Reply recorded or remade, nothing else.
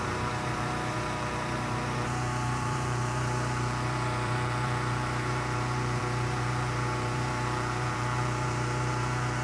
remade